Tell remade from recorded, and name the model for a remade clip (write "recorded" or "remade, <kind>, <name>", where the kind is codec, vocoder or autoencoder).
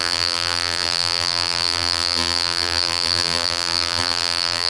remade, vocoder, BigVGAN v2